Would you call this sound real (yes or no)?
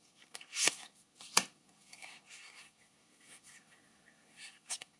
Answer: no